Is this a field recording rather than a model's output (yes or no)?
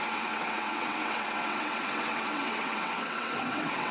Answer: no